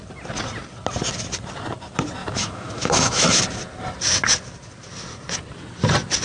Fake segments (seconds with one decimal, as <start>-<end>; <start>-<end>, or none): 2.2-3.4